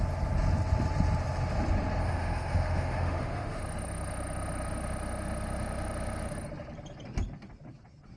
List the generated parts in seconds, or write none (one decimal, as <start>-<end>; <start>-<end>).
2.0-3.6